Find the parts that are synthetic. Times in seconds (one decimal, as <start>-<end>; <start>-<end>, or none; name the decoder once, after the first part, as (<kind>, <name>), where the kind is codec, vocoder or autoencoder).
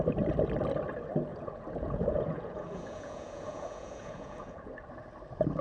1.3-4.7 (vocoder, Vocos)